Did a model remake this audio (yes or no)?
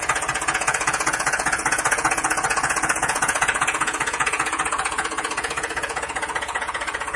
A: yes